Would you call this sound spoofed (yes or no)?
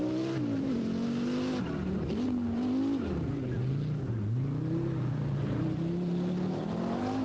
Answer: no